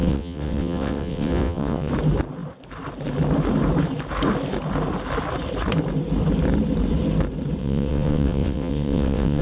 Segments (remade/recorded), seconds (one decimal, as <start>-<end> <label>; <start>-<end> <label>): 0.0-1.9 remade; 1.9-7.6 recorded; 7.6-9.4 remade